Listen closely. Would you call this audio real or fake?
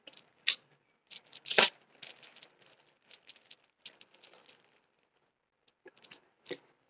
real